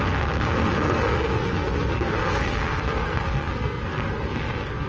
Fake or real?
fake